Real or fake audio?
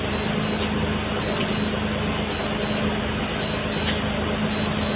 real